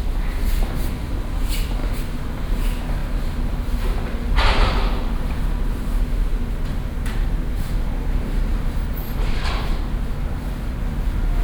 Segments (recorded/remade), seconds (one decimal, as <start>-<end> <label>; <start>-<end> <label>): 0.0-3.0 recorded; 3.0-5.4 remade; 5.4-9.0 recorded; 9.0-10.8 remade; 10.8-11.4 recorded